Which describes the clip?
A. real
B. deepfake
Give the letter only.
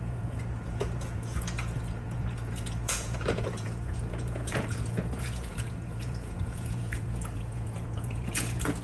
B